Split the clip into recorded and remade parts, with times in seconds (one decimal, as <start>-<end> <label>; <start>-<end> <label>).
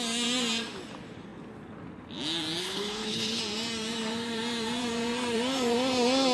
0.0-2.6 recorded; 2.6-3.4 remade; 3.4-6.3 recorded